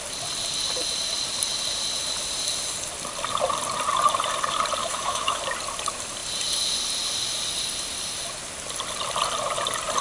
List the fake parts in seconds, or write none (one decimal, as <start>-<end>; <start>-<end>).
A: 4.8-5.4

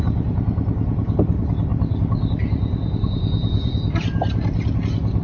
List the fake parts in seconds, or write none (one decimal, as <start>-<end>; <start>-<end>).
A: none

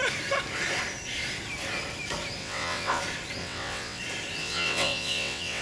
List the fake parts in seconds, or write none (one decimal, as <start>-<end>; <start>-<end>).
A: 2.4-3.0; 3.4-4.0; 4.4-5.6

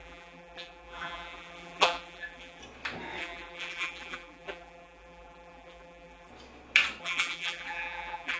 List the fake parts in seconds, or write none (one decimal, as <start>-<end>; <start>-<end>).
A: 0.0-2.6; 3.2-6.3; 7.0-8.4

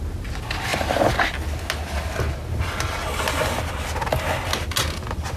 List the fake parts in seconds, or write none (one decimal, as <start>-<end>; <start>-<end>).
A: none

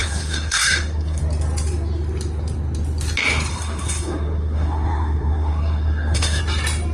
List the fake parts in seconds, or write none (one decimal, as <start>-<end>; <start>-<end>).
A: 0.0-1.2; 3.5-6.4